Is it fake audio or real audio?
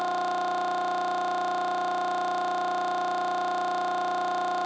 real